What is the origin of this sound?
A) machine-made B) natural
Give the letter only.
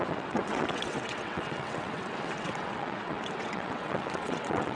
A